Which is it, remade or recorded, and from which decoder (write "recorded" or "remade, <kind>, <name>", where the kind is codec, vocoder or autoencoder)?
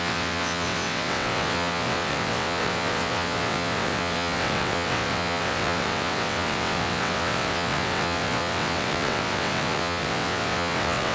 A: remade, vocoder, WaveNeXt